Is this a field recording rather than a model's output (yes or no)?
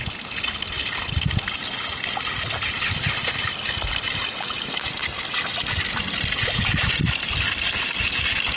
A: yes